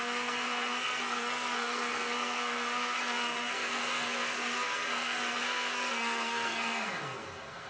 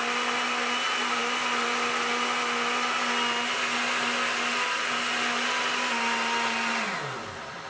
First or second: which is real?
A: second